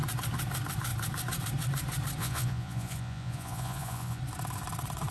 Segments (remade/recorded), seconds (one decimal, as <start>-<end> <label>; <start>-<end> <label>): 0.0-2.2 recorded; 2.2-4.2 remade; 4.2-5.1 recorded